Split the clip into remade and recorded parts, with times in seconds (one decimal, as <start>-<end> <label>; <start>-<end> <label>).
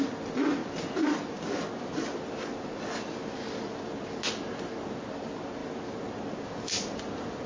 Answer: 0.0-7.5 recorded